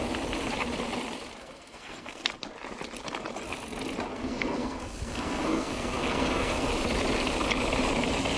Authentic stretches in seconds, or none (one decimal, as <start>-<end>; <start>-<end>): 0.0-1.4; 2.3-4.1; 6.7-8.4